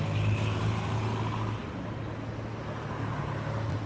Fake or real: real